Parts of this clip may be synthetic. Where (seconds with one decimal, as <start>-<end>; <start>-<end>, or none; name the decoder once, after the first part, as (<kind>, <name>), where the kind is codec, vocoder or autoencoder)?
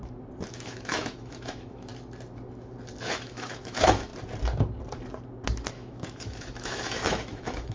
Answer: 0.5-1.9 (autoencoder, DAC-VAE); 3.0-4.1; 5.7-7.7